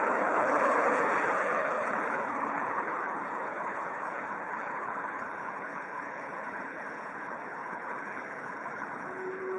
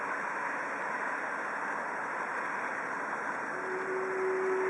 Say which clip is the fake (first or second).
first